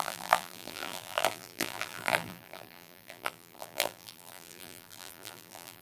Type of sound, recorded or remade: remade